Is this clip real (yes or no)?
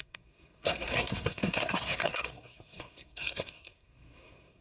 no